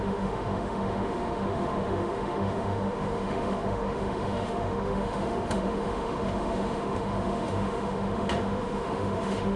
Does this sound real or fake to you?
fake